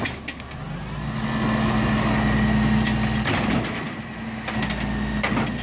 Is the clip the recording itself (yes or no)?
yes